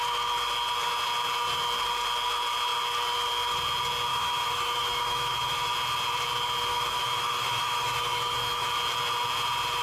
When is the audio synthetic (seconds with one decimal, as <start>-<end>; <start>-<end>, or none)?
4.1-5.7; 6.7-8.7